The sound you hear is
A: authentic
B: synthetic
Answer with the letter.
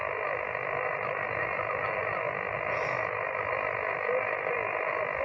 A